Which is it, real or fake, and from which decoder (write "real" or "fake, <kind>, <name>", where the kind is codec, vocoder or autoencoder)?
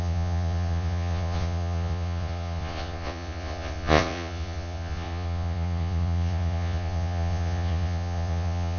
fake, vocoder, Vocos